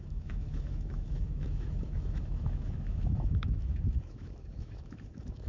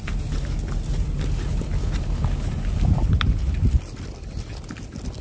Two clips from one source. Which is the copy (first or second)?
first